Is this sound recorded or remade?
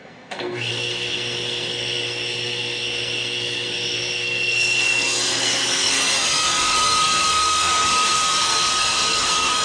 remade